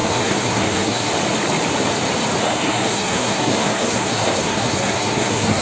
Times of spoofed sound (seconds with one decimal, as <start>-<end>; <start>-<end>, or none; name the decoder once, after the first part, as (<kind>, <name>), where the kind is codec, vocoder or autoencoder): 0.0-1.1 (codec, SNAC); 2.4-5.6